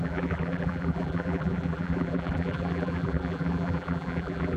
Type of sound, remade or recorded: remade